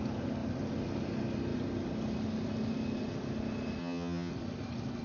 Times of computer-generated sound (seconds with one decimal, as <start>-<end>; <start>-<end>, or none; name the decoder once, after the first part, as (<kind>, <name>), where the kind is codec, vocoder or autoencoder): 3.8-4.3 (vocoder, HiFi-GAN)